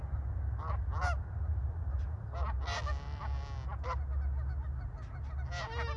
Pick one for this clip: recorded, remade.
recorded